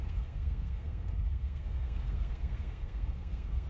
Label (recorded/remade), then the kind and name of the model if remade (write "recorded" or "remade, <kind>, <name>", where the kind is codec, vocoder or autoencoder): remade, codec, SNAC